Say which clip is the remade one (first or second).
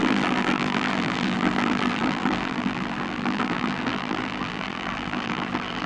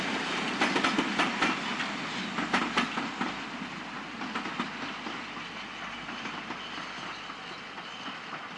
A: first